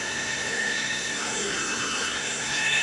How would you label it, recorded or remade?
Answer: remade